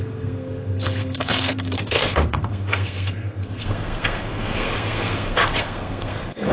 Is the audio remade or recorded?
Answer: remade